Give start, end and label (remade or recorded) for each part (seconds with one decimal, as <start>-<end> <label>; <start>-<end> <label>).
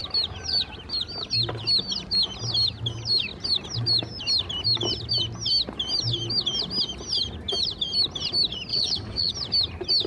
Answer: 0.0-8.7 recorded; 8.7-9.3 remade; 9.3-10.1 recorded